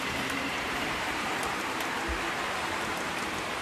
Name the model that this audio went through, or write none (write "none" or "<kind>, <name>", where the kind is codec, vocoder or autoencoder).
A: vocoder, BigVGAN v2